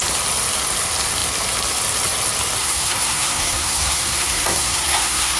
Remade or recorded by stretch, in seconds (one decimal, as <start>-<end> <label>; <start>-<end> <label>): 0.0-2.6 recorded; 2.6-5.4 remade